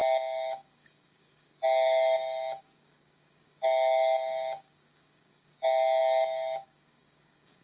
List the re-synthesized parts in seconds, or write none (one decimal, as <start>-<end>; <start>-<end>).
0.0-7.6